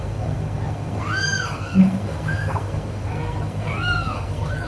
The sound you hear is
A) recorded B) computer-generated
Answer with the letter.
B